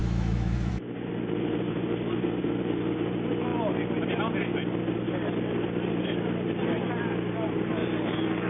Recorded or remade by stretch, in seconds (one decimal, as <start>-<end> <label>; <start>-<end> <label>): 0.0-0.7 remade; 0.7-8.5 recorded